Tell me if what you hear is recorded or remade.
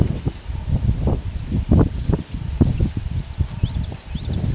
recorded